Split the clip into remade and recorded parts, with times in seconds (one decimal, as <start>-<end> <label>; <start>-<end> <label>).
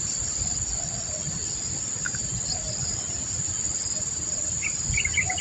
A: 0.0-5.4 recorded